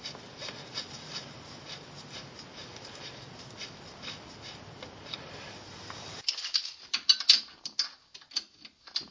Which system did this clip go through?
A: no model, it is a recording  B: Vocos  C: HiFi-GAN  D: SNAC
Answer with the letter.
A